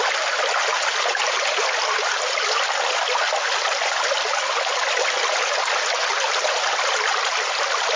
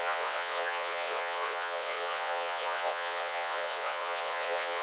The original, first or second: first